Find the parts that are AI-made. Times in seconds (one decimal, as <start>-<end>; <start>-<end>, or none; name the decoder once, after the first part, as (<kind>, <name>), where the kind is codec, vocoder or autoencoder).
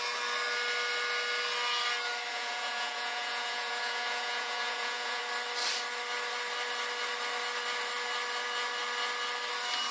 2.3-5.2 (vocoder, Vocos)